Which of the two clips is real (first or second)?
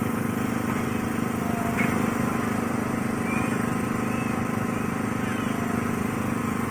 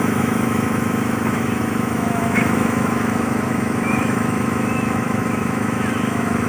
first